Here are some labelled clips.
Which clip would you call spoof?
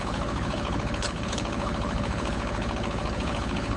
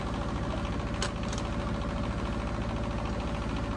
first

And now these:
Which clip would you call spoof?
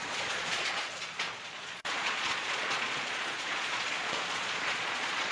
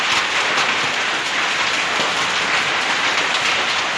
first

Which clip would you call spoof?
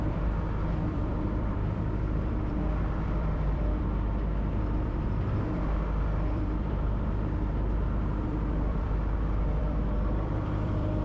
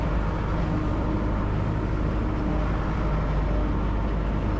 first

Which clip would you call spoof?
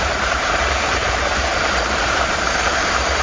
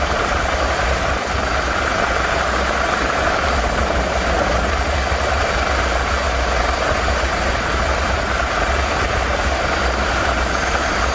first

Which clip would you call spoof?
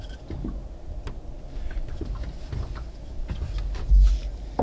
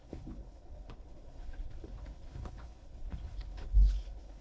second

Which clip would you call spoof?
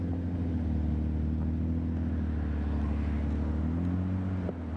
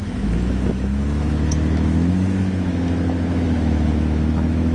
second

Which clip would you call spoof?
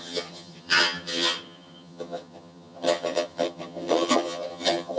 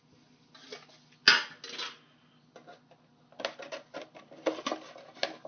first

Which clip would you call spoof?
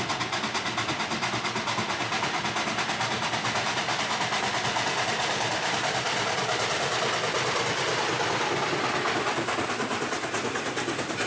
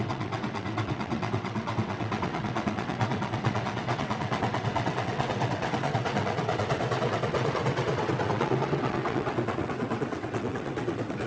second